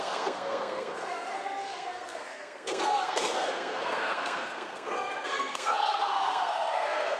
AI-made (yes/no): yes